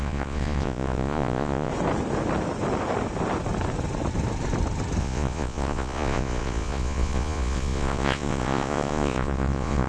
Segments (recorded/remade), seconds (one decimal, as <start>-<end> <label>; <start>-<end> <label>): 0.0-1.7 remade; 1.7-5.0 recorded; 5.0-9.9 remade